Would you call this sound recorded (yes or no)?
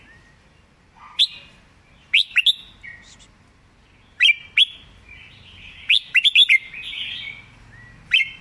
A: yes